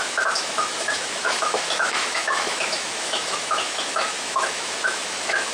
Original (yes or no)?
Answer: no